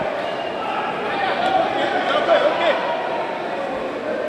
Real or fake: real